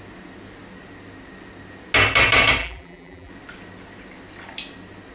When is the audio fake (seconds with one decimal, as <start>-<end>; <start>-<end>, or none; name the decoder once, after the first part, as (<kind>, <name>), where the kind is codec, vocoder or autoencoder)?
2.6-3.3 (vocoder, BigVGAN v2)